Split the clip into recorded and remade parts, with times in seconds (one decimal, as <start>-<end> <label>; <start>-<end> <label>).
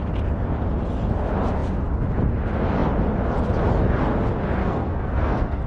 0.0-4.6 recorded; 4.6-5.7 remade